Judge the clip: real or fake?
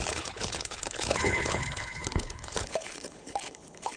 fake